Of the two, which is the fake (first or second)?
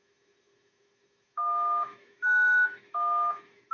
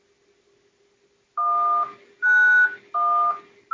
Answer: first